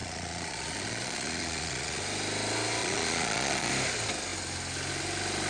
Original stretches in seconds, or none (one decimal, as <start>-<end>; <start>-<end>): 2.0-2.8; 3.7-5.5